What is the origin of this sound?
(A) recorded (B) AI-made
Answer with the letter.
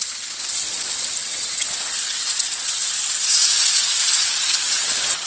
B